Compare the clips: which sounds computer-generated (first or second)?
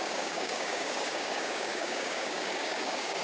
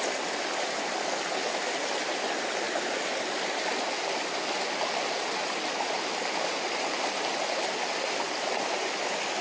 first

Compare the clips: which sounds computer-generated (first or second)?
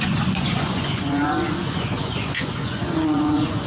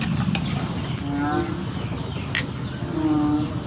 first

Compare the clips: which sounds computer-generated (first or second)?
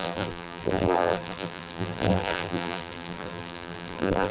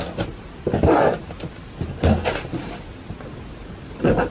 first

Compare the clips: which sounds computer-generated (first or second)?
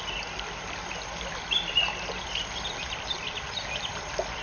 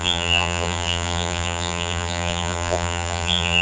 second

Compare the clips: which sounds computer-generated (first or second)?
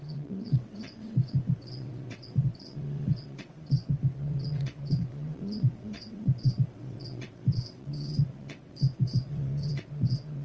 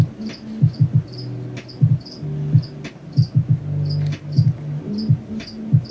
first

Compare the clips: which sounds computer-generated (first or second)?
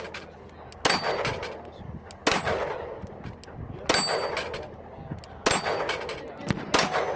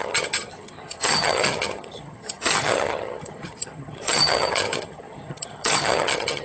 second